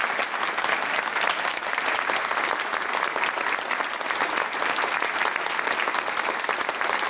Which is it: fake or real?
real